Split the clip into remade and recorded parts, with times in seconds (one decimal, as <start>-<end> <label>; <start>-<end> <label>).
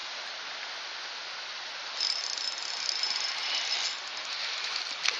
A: 0.0-5.2 recorded